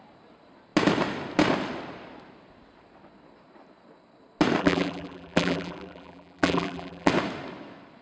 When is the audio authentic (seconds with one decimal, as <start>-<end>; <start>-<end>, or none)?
0.0-4.6; 7.1-8.0